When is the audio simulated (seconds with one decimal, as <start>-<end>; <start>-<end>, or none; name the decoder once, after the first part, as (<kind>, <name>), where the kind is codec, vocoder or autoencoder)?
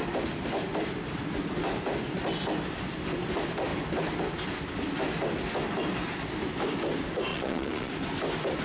7.3-7.9 (vocoder, Vocos)